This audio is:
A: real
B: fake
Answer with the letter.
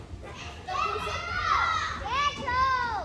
A